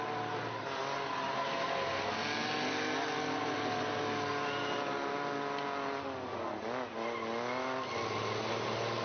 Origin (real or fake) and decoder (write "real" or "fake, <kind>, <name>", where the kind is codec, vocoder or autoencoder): real